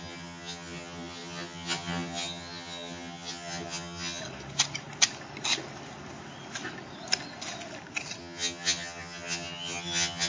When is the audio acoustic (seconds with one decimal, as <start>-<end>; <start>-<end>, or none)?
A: 4.2-8.2